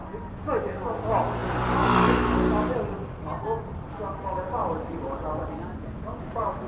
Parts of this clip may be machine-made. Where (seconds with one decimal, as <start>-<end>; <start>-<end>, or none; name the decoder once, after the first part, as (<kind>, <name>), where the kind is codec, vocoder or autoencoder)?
none